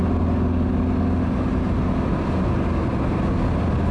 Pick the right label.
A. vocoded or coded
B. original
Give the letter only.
B